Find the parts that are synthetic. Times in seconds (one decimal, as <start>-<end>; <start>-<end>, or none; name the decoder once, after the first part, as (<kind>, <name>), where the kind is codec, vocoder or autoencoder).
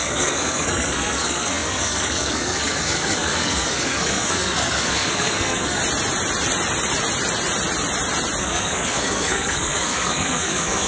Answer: 0.0-5.8 (codec, SNAC); 8.4-10.9